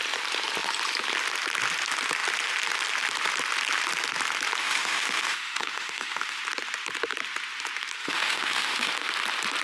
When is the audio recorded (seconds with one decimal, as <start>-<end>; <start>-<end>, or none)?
0.0-4.6; 6.4-8.0; 8.9-9.6